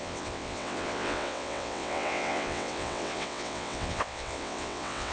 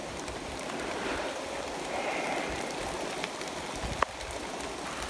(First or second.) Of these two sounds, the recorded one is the second